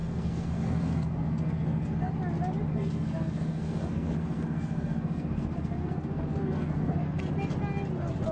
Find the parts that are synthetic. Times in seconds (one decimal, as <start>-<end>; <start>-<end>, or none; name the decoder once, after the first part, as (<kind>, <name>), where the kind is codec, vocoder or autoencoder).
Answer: 0.0-2.1 (codec, SNAC); 2.7-7.2